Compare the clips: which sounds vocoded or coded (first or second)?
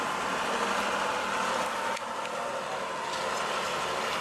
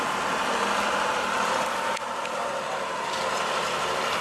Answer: second